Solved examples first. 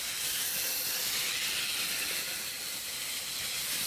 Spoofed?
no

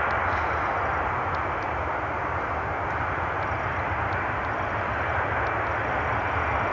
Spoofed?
no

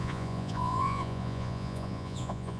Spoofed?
yes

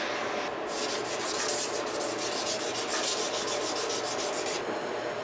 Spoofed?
no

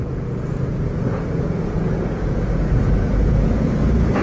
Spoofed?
yes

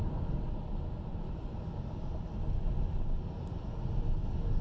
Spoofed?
no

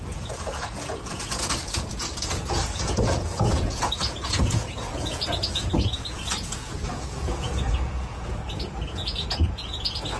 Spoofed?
yes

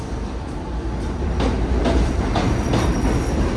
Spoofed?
no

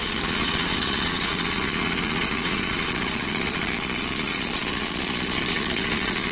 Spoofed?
yes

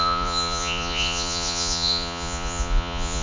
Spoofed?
yes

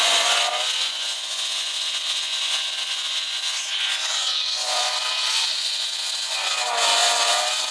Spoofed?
yes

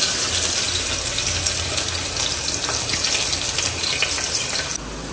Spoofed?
no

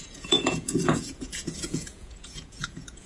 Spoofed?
yes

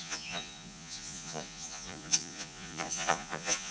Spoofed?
yes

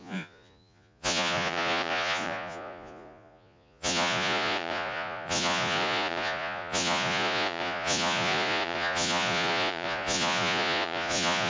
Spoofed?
yes